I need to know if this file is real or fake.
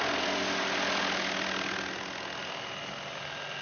real